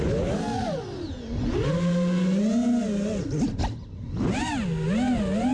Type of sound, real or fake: real